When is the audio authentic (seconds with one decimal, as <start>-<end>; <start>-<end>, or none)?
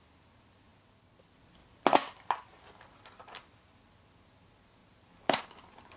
0.0-3.2; 3.9-4.8; 5.4-6.0